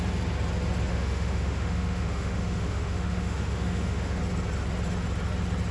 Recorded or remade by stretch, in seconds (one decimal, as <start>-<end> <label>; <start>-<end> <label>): 0.0-0.9 recorded; 0.9-4.2 remade; 4.2-5.7 recorded